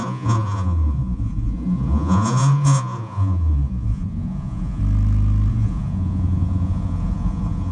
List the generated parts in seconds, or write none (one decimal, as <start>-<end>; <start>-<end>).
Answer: 0.0-4.8; 5.5-7.7